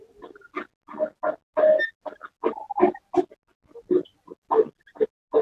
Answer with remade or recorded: recorded